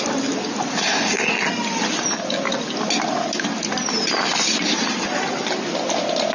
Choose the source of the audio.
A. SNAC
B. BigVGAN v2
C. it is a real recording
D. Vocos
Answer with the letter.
C